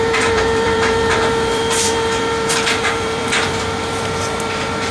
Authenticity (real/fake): fake